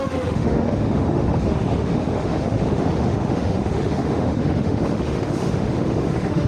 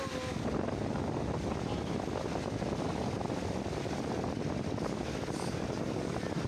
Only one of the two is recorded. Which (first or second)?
second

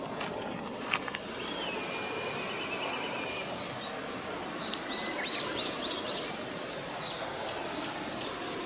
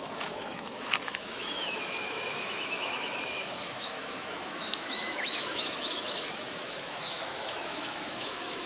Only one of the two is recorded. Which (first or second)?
first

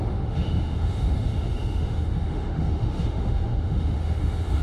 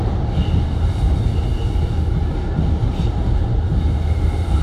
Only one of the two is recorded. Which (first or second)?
second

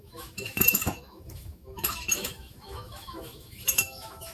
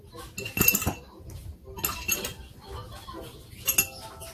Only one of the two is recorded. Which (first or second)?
second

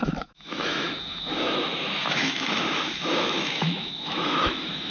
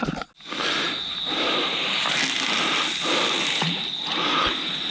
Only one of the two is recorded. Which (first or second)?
second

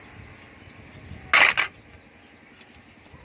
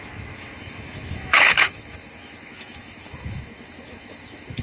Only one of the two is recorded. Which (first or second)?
first